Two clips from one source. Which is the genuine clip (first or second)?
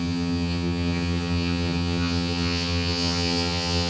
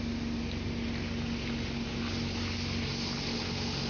second